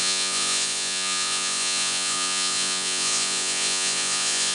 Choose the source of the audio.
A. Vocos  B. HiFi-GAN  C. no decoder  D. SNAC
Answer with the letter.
A